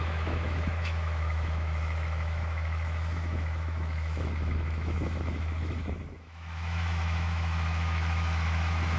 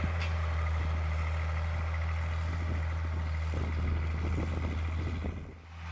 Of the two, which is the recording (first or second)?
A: second